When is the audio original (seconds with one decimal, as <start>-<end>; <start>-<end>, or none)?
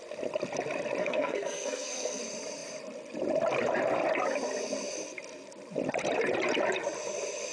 0.0-1.0; 2.2-7.5